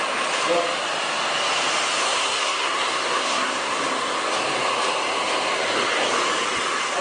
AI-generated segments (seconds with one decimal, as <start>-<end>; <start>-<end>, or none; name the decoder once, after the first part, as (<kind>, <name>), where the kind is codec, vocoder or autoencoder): 2.0-3.8 (codec, SNAC)